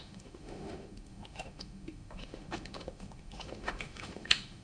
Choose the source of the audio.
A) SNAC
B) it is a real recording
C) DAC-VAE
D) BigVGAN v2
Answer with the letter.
C